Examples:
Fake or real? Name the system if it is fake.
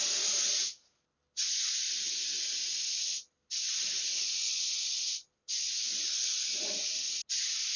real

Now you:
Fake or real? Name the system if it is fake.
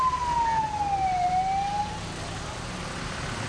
real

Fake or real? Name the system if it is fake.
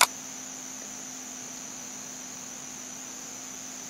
real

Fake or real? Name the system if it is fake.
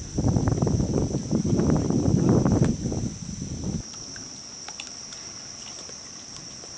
real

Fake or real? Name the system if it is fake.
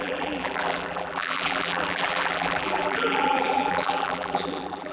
fake, vocoder, BigVGAN v2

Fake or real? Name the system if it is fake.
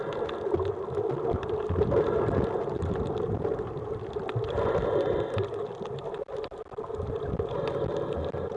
real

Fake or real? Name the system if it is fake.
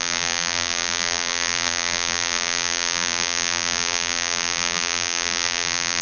fake, vocoder, BigVGAN v2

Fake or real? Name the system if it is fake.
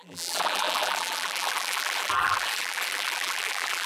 fake, vocoder, BigVGAN v2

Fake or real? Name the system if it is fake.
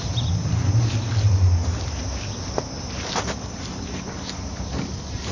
real